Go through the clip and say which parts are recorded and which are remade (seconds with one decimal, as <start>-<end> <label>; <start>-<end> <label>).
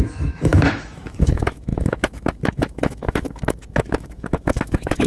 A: 0.0-5.1 remade